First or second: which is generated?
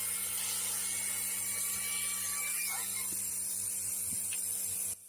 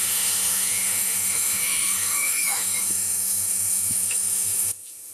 second